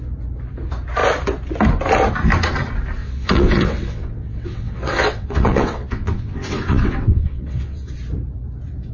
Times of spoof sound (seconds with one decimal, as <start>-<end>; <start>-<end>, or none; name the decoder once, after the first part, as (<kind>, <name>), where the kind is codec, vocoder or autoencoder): 3.0-7.9 (vocoder, WaveNeXt)